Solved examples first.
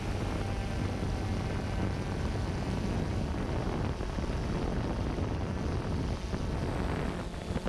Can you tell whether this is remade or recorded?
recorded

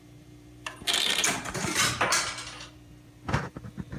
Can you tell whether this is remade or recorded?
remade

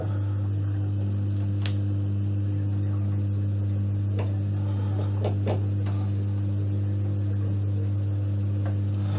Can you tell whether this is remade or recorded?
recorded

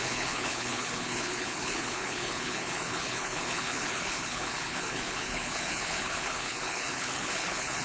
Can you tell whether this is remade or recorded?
remade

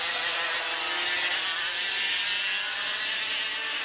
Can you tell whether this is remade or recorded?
recorded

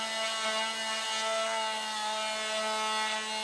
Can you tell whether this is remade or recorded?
recorded